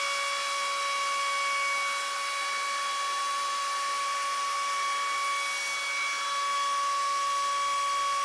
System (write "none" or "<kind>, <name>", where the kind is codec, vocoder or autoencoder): none